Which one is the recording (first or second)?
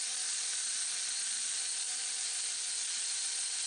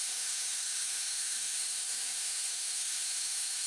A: first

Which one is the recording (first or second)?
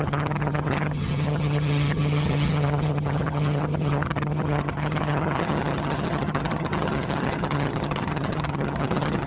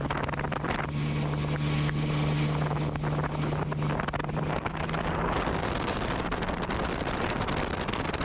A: second